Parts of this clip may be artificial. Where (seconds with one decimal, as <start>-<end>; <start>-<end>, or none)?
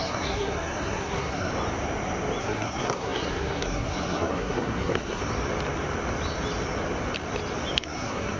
0.0-1.5; 2.4-5.2; 7.8-8.4